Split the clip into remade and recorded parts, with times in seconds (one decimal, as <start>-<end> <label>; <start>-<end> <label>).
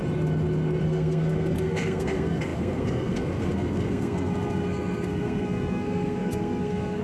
0.0-0.8 recorded; 0.8-7.0 remade